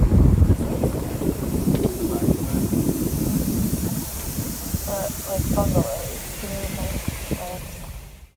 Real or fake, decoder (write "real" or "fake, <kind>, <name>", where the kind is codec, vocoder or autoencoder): fake, vocoder, BigVGAN v2